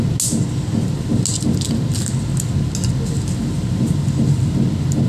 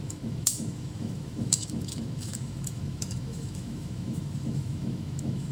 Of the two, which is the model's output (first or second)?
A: second